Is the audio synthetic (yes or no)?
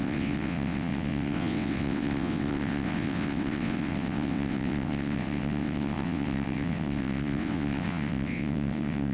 yes